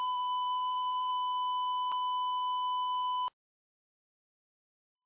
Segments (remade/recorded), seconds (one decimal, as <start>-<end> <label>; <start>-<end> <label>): 0.0-1.1 remade; 1.1-4.2 recorded; 4.2-5.1 remade